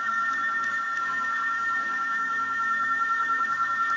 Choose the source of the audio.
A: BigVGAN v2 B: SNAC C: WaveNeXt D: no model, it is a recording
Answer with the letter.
B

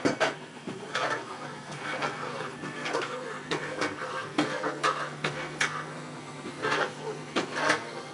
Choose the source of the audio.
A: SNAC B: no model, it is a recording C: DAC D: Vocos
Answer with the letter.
A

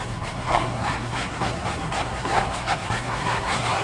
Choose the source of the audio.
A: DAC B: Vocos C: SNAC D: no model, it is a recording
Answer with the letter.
C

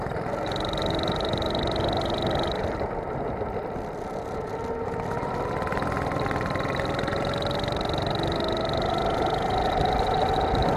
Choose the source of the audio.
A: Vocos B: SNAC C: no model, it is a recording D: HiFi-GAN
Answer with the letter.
C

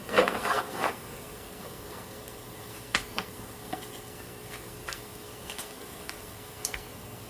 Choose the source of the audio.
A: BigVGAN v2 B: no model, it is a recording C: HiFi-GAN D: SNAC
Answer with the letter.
D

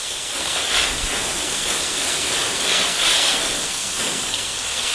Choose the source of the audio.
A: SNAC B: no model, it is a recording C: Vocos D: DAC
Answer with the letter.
A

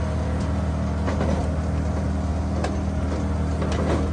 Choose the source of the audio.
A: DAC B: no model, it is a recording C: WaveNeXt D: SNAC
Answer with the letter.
B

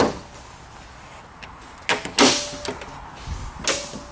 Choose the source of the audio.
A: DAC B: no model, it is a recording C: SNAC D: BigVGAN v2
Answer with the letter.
B